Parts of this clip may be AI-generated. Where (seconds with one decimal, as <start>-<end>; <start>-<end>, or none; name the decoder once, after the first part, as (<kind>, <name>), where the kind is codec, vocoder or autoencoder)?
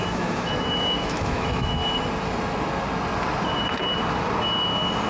0.0-1.8 (autoencoder, DAC-VAE)